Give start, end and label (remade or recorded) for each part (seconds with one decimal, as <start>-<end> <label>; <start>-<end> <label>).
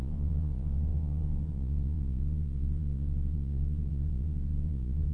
0.0-5.1 remade